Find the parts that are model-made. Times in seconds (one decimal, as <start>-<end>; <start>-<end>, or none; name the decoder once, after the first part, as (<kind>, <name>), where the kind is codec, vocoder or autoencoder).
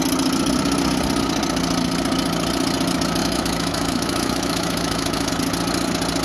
3.2-5.3 (autoencoder, DAC-VAE)